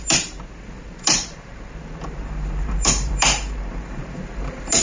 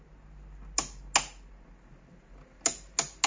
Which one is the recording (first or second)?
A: second